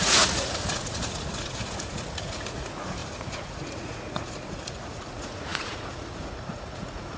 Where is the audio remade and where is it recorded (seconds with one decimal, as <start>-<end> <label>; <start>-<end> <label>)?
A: 0.0-7.2 remade